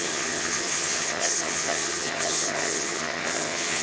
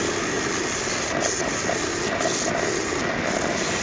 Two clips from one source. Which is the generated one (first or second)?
first